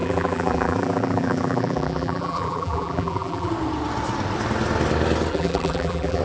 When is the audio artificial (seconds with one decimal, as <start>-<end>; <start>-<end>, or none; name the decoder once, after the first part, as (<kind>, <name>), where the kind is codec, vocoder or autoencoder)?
0.0-3.5 (vocoder, BigVGAN v2); 5.3-6.2